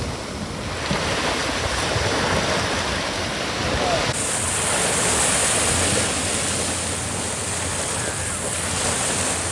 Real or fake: real